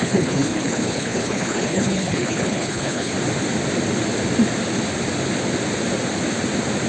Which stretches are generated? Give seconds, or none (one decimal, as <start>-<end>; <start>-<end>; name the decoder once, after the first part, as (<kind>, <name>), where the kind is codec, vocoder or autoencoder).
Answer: 0.0-3.1 (codec, HILCodec)